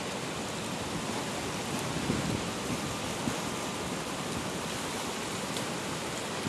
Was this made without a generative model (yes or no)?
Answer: yes